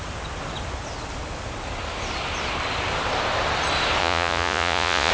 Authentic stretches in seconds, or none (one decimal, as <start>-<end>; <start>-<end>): 0.0-4.0